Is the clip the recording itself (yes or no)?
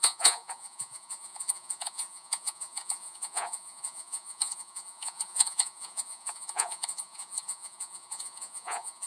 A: no